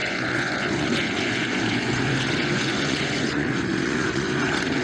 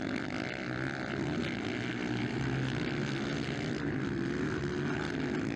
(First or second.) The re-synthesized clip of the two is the first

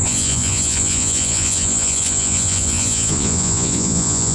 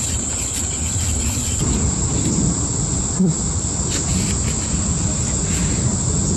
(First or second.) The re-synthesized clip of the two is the first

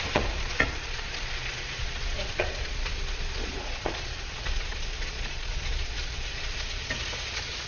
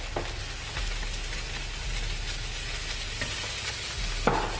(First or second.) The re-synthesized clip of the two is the first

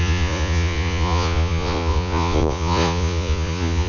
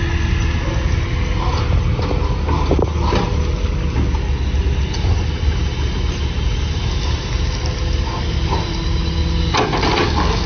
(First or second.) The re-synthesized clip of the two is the first